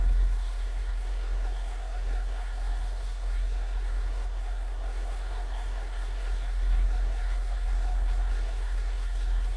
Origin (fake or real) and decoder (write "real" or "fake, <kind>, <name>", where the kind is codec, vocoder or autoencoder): fake, codec, SNAC